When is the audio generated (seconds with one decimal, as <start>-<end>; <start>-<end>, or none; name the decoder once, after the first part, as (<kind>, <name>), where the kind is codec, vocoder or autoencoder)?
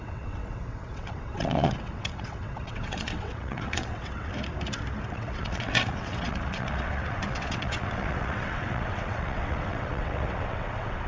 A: 0.0-4.3 (vocoder, WaveNeXt); 5.1-11.1